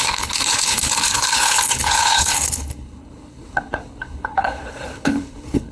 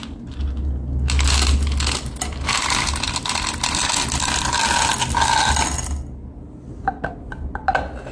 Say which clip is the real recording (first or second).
second